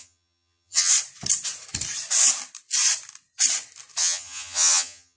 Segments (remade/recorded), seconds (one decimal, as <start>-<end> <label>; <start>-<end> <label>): 0.0-0.9 remade; 0.9-4.0 recorded; 4.0-5.2 remade